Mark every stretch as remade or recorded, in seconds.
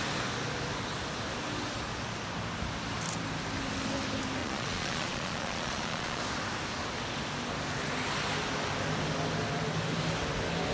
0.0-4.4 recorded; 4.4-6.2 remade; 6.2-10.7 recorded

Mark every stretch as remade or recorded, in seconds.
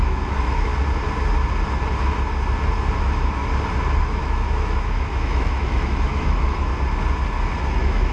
0.0-0.7 remade; 0.7-3.0 recorded; 3.0-3.4 remade; 3.4-4.0 recorded; 4.0-6.7 remade; 6.7-7.6 recorded; 7.6-8.1 remade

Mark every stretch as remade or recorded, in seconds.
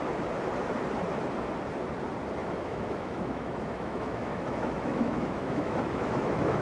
0.0-2.4 recorded; 2.4-6.6 remade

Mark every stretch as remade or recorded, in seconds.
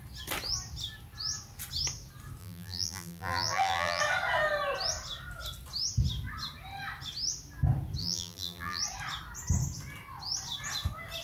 0.0-2.4 recorded; 2.4-4.0 remade; 4.0-8.0 recorded; 8.0-8.8 remade; 8.8-11.2 recorded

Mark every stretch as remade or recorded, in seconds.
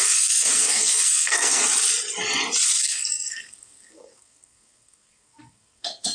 0.0-1.6 remade; 1.6-2.8 recorded; 2.8-6.1 remade